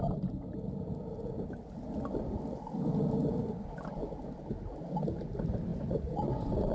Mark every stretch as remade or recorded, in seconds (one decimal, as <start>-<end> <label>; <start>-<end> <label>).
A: 0.0-5.7 recorded; 5.7-6.7 remade